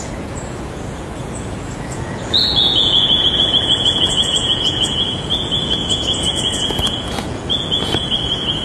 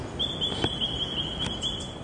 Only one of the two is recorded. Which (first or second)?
second